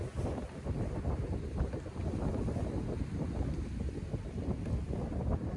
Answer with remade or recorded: recorded